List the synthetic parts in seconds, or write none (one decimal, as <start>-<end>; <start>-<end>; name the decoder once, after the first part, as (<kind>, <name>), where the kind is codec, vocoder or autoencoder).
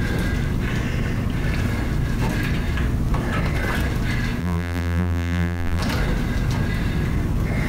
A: 4.4-5.8 (vocoder, BigVGAN v2)